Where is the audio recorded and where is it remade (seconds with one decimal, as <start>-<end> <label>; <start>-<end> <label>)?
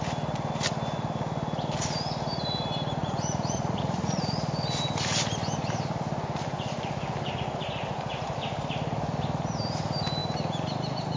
0.0-3.0 recorded; 3.0-4.3 remade; 4.3-11.2 recorded